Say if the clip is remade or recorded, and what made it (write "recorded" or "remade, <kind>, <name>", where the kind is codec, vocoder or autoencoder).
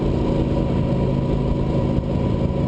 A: recorded